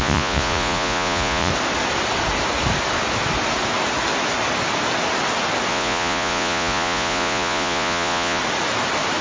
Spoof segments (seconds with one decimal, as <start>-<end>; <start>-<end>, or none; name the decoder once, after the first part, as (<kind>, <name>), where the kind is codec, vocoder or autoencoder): 0.0-1.5 (vocoder, Vocos); 5.7-8.4